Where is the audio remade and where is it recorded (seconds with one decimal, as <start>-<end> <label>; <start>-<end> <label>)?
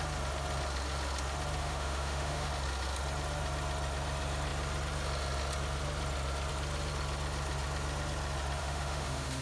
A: 0.0-1.6 recorded; 1.6-2.5 remade; 2.5-8.6 recorded; 8.6-9.4 remade